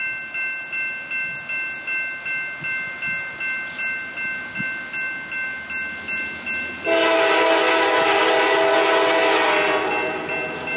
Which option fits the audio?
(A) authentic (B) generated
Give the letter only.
A